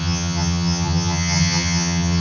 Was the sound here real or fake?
fake